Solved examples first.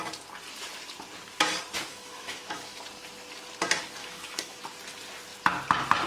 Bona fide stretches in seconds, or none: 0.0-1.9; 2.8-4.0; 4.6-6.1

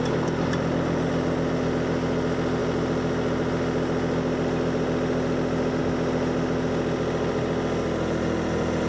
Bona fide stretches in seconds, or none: 0.0-8.9

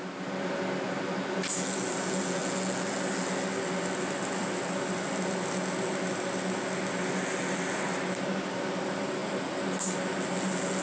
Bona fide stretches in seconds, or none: 0.0-10.8

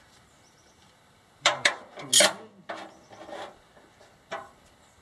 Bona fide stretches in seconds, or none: 2.1-4.3

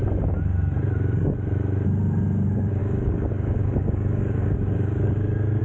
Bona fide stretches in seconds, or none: 0.0-2.8